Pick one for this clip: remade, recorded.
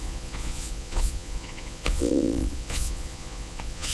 remade